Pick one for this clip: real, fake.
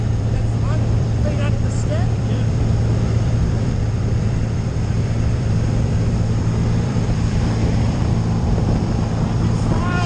fake